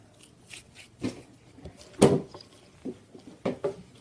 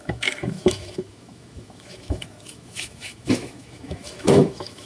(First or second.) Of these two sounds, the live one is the first